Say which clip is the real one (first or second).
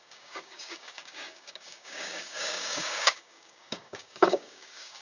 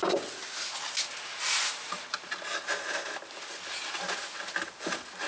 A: second